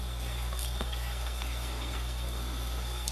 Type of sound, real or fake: fake